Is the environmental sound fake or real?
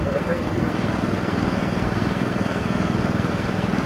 fake